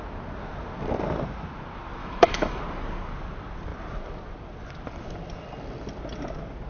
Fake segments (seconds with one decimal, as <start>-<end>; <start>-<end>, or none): 2.0-2.6